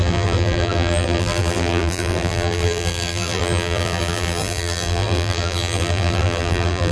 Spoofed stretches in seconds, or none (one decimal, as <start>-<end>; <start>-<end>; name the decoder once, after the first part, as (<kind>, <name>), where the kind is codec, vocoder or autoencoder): 0.0-6.9 (vocoder, BigVGAN v2)